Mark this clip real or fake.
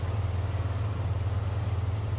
real